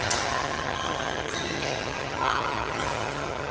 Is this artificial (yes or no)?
yes